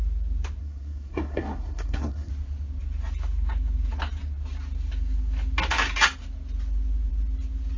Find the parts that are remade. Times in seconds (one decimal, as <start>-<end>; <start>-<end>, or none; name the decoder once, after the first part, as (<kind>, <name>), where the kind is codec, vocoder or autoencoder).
0.6-2.3 (codec, SNAC)